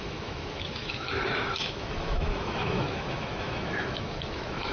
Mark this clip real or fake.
fake